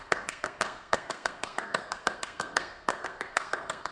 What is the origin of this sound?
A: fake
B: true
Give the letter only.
A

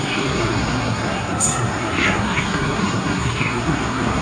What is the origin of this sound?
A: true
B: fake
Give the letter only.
B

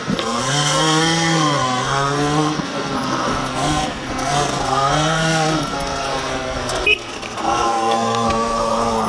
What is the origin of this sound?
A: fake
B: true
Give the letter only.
A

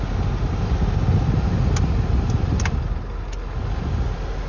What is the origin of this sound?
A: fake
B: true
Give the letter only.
B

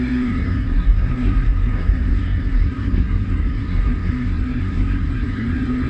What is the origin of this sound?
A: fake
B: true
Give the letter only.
A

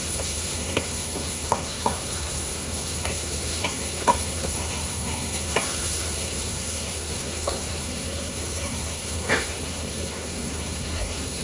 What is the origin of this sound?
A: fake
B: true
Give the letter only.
A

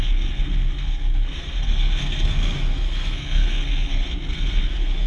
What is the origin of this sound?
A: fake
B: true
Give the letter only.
A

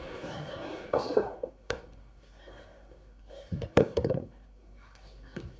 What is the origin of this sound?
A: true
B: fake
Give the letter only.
B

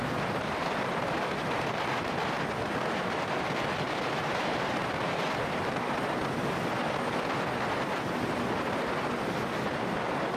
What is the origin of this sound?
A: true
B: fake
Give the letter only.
A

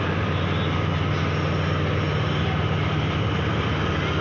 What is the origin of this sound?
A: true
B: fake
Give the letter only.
A